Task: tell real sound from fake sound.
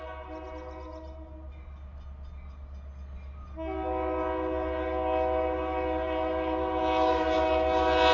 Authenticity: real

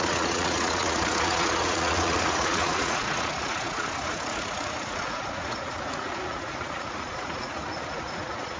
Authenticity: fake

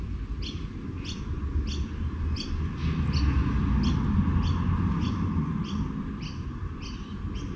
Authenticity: real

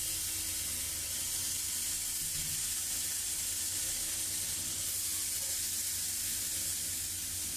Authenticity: real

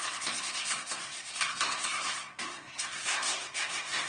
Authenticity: fake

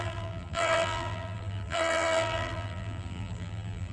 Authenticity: fake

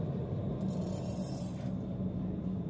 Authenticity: fake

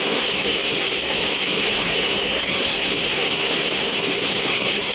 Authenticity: fake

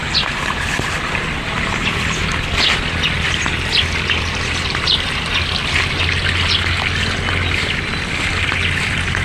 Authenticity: real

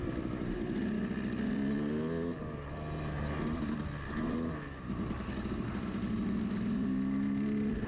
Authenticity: real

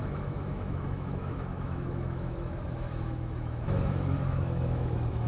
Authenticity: fake